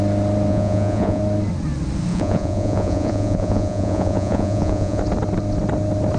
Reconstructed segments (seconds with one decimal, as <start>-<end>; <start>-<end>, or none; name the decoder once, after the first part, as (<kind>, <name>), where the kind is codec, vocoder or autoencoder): 0.5-1.2 (vocoder, Vocos); 2.1-5.0